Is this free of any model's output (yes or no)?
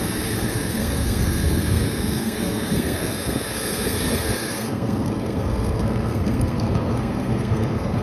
no